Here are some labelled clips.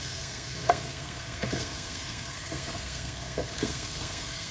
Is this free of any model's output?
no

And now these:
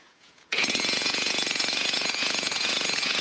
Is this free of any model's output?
no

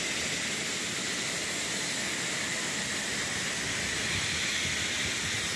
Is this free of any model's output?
yes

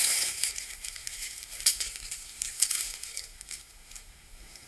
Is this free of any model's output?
no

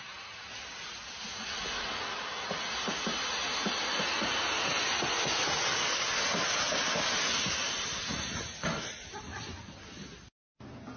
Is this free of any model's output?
yes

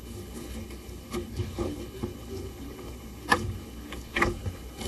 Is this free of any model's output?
no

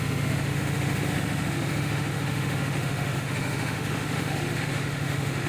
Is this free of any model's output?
no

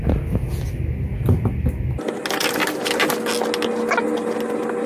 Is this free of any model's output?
yes